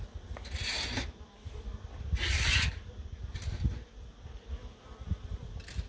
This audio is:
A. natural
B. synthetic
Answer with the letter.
A